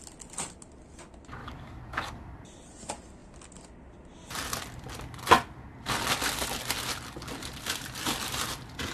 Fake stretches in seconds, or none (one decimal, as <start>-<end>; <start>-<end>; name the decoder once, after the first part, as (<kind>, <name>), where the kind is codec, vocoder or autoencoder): 1.4-2.1 (codec, DAC)